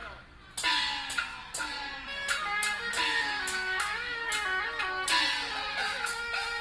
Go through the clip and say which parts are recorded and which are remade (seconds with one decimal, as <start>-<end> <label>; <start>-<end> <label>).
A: 0.0-3.2 recorded; 3.2-4.2 remade; 4.2-5.7 recorded; 5.7-6.6 remade